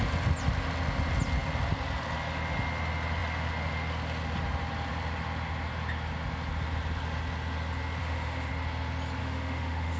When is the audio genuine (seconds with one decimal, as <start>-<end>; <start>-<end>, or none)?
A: 0.0-8.0; 8.5-9.2